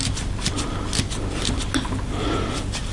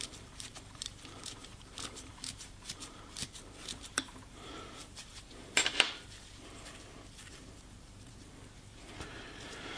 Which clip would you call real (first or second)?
first